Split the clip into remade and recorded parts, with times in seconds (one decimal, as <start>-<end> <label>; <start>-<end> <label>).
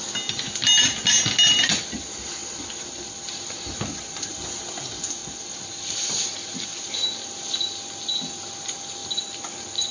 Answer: 0.0-2.4 recorded; 2.4-4.3 remade; 4.3-5.2 recorded; 5.2-6.9 remade; 6.9-9.0 recorded; 9.0-9.9 remade